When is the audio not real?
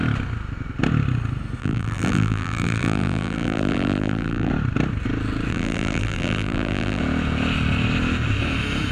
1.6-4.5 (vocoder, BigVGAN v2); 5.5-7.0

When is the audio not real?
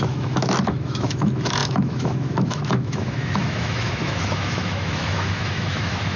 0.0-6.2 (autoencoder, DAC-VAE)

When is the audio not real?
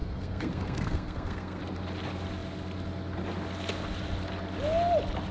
0.0-1.6 (codec, SNAC)